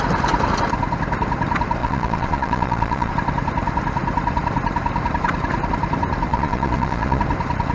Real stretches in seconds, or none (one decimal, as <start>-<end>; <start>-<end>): 0.0-1.8; 3.1-6.3; 7.2-7.7